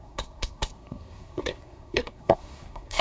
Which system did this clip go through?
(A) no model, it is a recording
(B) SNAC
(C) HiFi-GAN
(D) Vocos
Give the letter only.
B